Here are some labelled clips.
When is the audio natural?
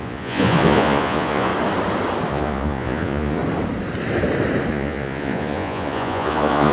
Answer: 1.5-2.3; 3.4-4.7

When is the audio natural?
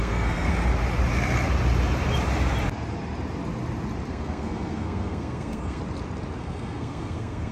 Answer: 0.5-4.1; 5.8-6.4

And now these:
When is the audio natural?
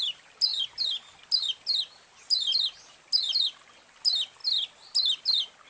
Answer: 0.0-5.7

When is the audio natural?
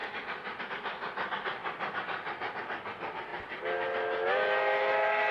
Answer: 0.0-5.3